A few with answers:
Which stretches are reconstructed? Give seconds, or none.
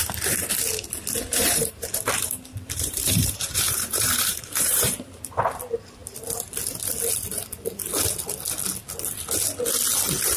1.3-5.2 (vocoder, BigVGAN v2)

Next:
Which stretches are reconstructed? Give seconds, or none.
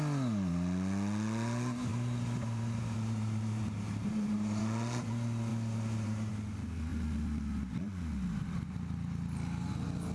1.9-4.6 (vocoder, BigVGAN v2); 5.5-6.3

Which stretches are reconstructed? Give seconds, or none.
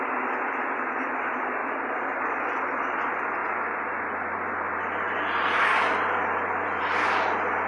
none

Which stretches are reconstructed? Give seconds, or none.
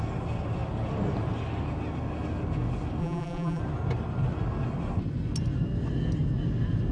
3.0-3.6 (vocoder, BigVGAN v2)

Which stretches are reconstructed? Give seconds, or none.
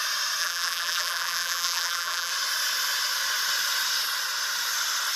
0.4-2.3 (vocoder, BigVGAN v2)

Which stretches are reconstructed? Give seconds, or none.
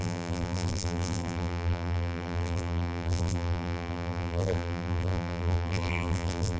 0.0-6.6 (vocoder, BigVGAN v2)